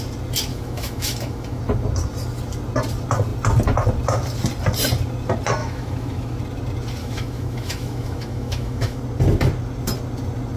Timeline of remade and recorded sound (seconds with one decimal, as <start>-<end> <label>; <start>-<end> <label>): 0.0-0.5 recorded; 0.5-1.6 remade; 1.6-5.6 recorded; 5.6-6.4 remade; 6.4-7.0 recorded; 7.0-9.0 remade; 9.0-10.6 recorded